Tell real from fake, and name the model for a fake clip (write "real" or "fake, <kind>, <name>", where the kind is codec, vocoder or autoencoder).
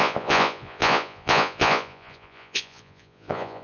fake, vocoder, Vocos